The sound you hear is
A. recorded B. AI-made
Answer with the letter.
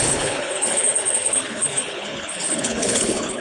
B